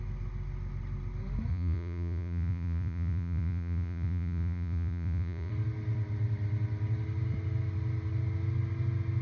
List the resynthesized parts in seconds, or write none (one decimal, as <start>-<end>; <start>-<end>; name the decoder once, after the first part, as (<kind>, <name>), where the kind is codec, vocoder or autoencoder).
1.5-5.5 (vocoder, Vocos)